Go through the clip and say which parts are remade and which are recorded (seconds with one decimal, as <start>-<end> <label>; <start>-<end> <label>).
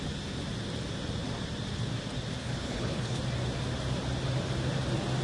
0.0-2.4 recorded; 2.4-3.2 remade; 3.2-5.2 recorded